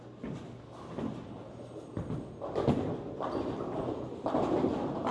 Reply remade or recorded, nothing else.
recorded